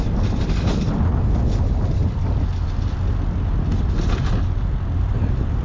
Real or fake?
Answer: real